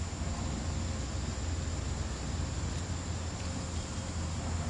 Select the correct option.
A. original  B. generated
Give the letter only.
A